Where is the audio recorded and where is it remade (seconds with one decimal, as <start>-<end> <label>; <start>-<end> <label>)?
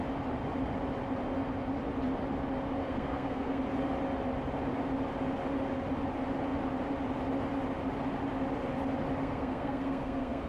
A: 0.0-2.8 recorded; 2.8-3.6 remade; 3.6-9.2 recorded; 9.2-10.5 remade